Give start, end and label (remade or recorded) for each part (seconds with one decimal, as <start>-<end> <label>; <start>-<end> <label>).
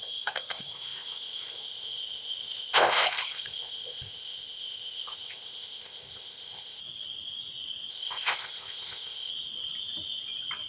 0.0-6.8 remade; 6.8-7.9 recorded; 7.9-9.3 remade; 9.3-10.7 recorded